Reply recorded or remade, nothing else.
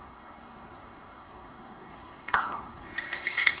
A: remade